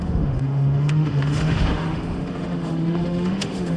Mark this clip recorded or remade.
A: remade